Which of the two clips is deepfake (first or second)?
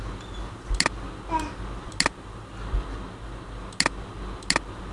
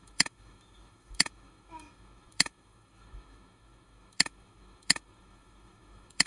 second